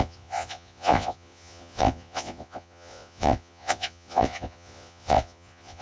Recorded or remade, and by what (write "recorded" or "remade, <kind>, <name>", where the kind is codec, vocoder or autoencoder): remade, vocoder, Vocos